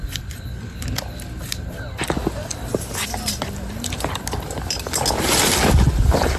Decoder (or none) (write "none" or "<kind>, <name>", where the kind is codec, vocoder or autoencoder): none